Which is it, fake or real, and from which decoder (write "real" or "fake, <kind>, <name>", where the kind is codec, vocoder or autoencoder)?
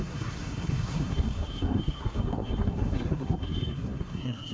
fake, codec, SNAC